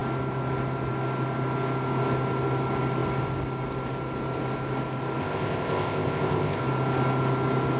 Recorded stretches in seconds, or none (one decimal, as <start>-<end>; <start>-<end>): 0.0-5.2; 6.6-7.8